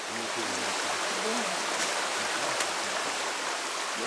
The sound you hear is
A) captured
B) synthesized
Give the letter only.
A